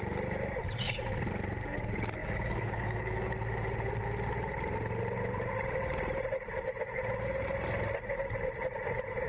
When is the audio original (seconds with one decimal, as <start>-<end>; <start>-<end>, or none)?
0.0-2.2; 3.3-9.3